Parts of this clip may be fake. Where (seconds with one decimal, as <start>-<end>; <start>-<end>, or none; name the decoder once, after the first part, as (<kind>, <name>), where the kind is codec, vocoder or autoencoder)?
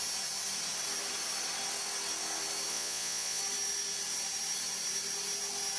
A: 2.7-3.4 (vocoder, Vocos)